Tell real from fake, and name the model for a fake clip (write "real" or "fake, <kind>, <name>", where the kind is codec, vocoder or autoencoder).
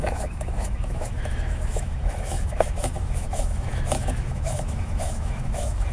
fake, autoencoder, DAC-VAE